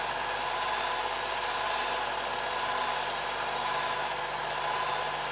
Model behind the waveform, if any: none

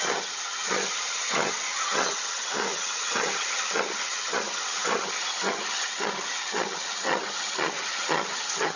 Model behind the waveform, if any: vocoder, HiFi-GAN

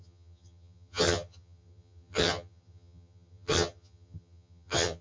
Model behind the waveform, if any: vocoder, HiFi-GAN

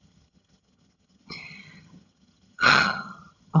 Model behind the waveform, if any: vocoder, HiFi-GAN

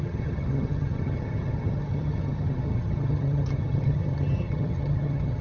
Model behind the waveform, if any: vocoder, HiFi-GAN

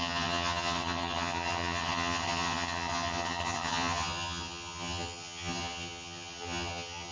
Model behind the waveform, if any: vocoder, HiFi-GAN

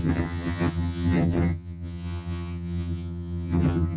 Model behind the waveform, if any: vocoder, HiFi-GAN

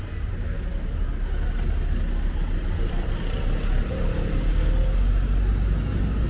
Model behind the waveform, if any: none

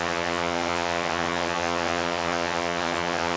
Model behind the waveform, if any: vocoder, HiFi-GAN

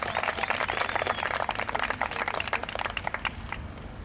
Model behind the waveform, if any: none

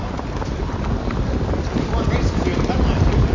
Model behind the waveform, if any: none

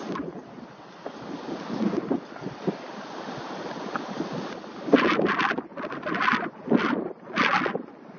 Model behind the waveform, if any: none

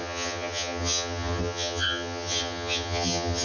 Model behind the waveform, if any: vocoder, HiFi-GAN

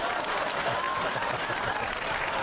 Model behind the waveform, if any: none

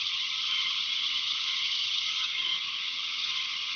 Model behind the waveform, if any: vocoder, HiFi-GAN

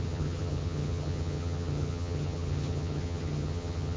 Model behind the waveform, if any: vocoder, HiFi-GAN